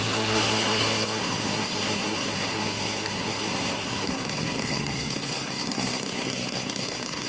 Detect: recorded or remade remade